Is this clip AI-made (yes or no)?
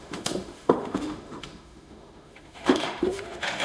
yes